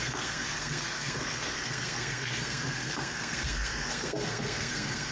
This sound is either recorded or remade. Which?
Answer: remade